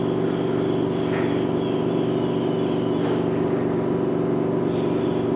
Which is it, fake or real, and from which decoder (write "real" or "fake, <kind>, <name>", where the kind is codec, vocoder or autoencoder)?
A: real